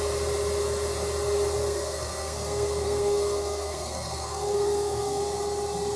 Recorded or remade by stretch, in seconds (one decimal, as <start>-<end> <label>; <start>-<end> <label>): 0.0-1.6 recorded; 1.6-5.2 remade; 5.2-6.0 recorded